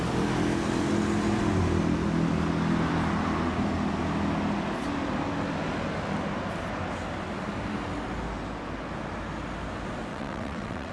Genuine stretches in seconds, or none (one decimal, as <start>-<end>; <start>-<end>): 0.0-10.1

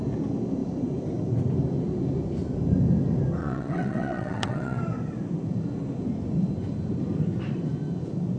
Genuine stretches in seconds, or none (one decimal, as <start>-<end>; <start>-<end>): 0.0-3.4; 4.8-8.4

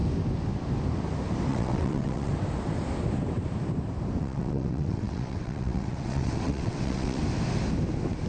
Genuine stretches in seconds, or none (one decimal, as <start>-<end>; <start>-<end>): 0.0-1.5; 2.3-4.2; 7.2-8.3